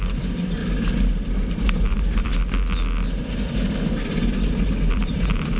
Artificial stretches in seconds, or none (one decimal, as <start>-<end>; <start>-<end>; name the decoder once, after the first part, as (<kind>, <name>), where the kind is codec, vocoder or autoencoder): 0.0-0.6 (vocoder, BigVGAN v2); 1.5-2.4; 3.2-3.9; 4.9-5.6